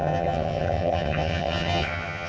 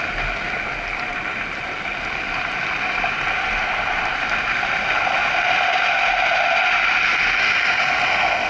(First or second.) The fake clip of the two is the first